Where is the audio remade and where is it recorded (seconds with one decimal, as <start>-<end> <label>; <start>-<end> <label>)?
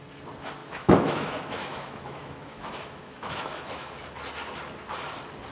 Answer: 0.0-0.6 recorded; 0.6-3.9 remade; 3.9-5.5 recorded